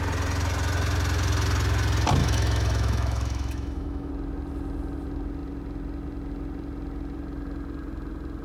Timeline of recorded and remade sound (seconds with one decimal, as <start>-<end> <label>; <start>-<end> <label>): 0.0-2.2 recorded; 2.2-4.1 remade; 4.1-8.4 recorded